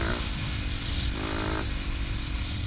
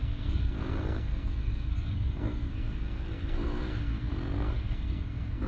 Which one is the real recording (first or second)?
first